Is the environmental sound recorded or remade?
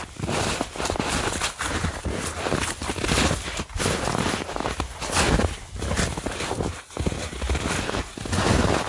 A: recorded